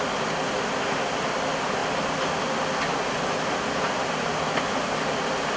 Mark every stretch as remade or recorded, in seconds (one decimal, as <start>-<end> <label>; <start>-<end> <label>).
0.0-5.6 recorded